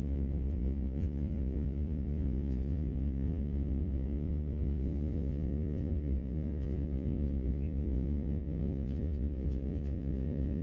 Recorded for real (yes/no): no